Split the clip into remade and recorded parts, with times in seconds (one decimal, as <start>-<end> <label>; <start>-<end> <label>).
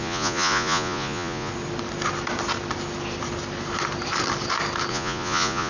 0.0-1.5 remade; 1.5-4.9 recorded; 4.9-5.7 remade